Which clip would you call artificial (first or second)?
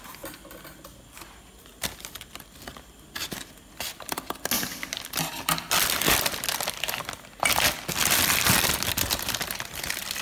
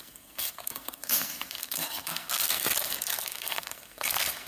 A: second